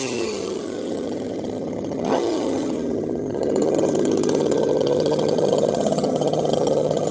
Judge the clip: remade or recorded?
remade